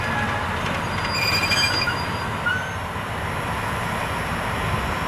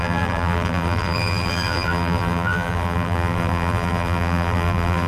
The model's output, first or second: second